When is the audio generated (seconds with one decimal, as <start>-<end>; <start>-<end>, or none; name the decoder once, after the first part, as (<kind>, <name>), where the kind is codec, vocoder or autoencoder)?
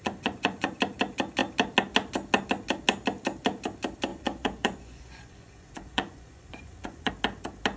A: 0.0-0.8 (vocoder, Vocos); 4.1-7.1